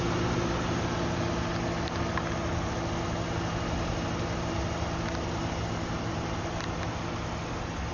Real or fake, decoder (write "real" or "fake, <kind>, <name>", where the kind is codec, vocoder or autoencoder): real